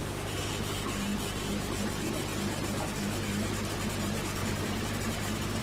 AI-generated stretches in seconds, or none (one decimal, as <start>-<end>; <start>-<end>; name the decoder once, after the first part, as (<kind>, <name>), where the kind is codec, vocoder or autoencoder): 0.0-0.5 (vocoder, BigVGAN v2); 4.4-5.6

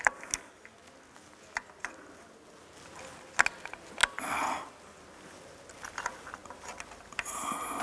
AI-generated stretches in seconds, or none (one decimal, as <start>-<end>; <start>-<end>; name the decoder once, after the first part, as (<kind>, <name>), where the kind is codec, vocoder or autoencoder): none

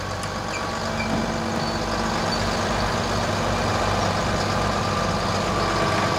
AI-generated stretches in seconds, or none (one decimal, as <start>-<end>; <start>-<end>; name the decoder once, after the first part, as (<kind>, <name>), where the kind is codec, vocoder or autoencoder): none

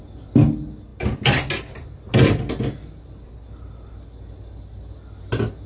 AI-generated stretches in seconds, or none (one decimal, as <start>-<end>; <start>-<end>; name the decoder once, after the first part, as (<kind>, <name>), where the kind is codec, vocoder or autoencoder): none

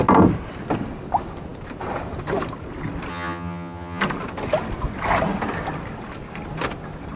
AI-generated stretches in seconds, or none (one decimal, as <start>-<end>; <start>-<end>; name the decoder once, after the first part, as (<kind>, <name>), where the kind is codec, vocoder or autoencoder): 3.1-4.0 (vocoder, HiFi-GAN)